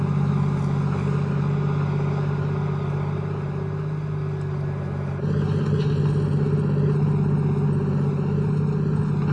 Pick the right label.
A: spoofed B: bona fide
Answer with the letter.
B